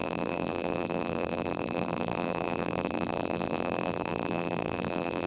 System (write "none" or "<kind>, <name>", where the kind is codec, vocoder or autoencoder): vocoder, BigVGAN v2